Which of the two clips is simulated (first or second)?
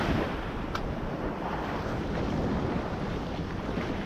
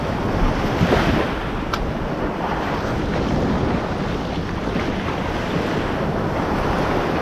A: first